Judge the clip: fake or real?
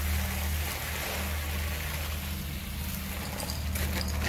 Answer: real